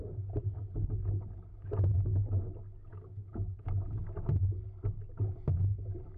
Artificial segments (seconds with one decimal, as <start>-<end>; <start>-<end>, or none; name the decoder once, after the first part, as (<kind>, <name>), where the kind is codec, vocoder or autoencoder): 1.5-2.2 (autoencoder, DAC-VAE); 2.9-4.0